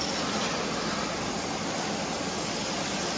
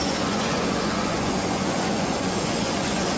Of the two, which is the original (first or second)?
first